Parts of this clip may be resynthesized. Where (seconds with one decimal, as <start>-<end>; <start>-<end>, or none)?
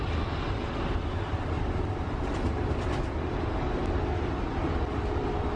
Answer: none